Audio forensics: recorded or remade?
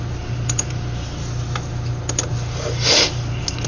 recorded